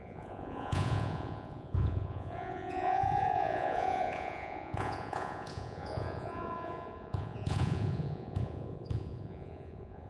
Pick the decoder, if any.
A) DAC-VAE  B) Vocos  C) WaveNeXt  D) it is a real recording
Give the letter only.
B